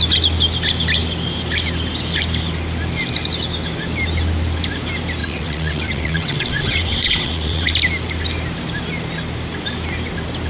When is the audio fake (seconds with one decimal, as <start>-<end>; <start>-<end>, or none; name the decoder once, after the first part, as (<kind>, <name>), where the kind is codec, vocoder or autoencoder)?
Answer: 5.2-7.7 (vocoder, WaveNeXt)

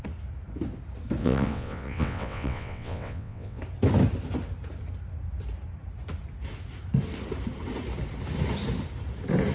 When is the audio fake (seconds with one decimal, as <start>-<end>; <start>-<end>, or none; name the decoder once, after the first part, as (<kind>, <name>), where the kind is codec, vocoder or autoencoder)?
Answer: 1.2-3.6 (vocoder, WaveNeXt)

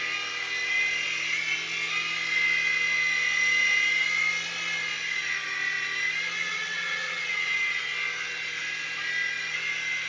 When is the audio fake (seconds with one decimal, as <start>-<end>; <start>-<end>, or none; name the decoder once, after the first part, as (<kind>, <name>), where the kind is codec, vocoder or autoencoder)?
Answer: 6.4-7.8 (vocoder, WaveNeXt)